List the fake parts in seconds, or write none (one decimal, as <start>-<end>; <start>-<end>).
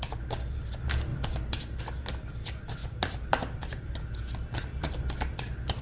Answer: 1.1-1.8; 2.8-4.9